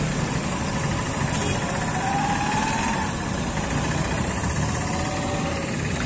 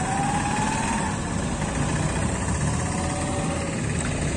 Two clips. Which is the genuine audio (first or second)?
second